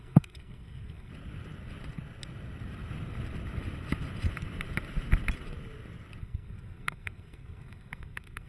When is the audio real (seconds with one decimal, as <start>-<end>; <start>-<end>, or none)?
1.1-6.2